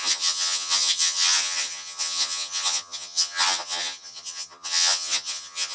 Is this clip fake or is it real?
fake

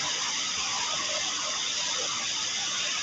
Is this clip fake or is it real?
real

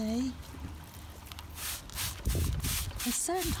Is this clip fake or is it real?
real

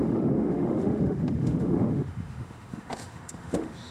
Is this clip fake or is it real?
fake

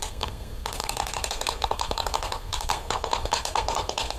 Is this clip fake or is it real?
fake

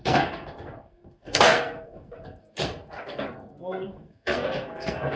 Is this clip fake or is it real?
fake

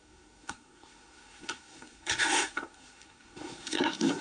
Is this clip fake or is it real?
fake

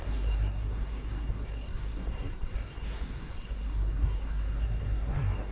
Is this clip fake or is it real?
fake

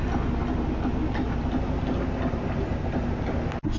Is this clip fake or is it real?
real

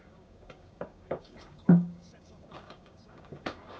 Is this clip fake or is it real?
fake